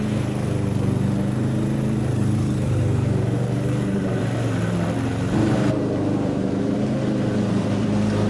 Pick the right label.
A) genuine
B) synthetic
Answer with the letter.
B